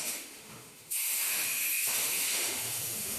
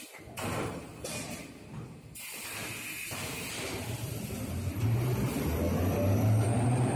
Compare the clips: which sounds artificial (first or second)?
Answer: first